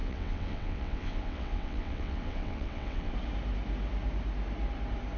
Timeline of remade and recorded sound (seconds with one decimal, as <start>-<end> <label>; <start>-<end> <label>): 0.0-3.1 remade; 3.1-5.2 recorded